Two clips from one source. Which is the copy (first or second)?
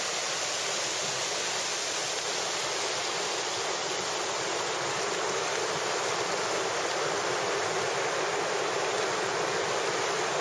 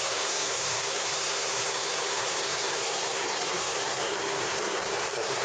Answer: second